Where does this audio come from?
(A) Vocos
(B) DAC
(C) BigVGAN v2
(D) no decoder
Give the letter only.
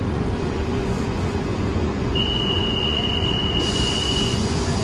A